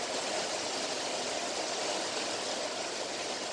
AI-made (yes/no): no